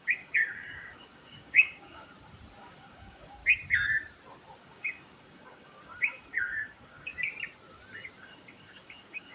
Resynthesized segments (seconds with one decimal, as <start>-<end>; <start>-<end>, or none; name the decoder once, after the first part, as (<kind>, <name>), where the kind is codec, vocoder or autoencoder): 0.0-2.1 (codec, DAC); 2.6-3.4; 4.6-7.1; 8.2-9.3